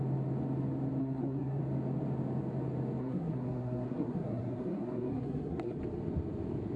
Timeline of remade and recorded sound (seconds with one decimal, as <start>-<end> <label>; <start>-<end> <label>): 0.0-1.0 recorded; 1.0-1.6 remade; 1.6-3.0 recorded; 3.0-5.8 remade; 5.8-6.8 recorded